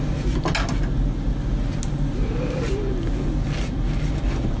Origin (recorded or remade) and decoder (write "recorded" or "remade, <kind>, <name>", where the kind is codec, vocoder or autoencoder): recorded